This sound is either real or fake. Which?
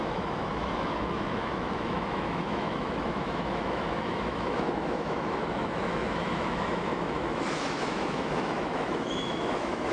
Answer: fake